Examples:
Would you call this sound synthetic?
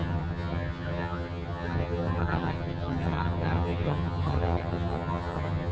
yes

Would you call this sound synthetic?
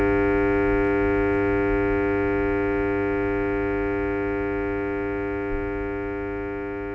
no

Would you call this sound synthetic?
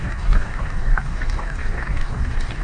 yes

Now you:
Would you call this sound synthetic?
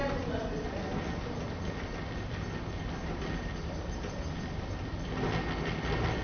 no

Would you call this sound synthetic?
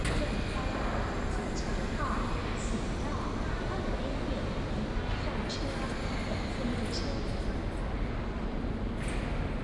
no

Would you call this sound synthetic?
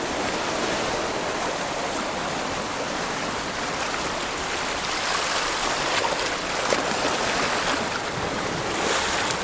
no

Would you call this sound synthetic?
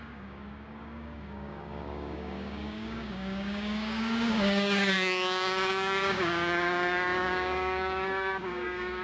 yes